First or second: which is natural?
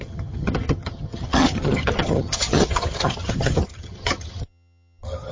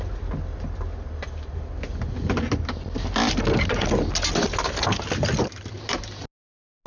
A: second